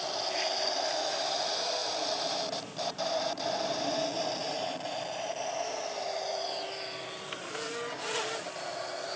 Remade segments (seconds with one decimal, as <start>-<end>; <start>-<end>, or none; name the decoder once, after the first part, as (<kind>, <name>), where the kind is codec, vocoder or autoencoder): 1.8-3.8 (vocoder, BigVGAN v2)